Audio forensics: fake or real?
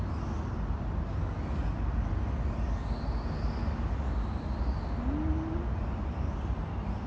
real